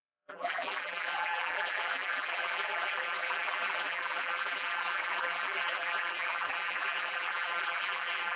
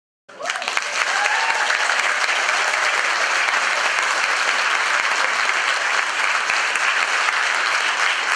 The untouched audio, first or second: second